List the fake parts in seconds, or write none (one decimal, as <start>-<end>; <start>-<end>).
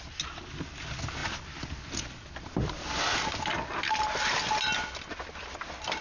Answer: none